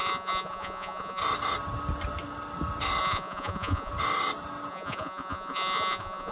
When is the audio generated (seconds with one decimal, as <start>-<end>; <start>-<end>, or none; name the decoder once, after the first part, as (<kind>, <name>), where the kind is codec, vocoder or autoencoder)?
0.0-1.2 (vocoder, Vocos); 3.0-3.9; 4.7-6.3